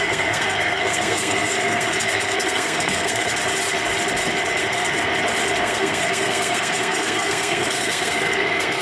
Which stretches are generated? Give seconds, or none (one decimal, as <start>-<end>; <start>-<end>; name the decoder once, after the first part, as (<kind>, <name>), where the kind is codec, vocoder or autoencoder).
0.0-3.3 (codec, SNAC); 4.6-5.1; 5.6-8.8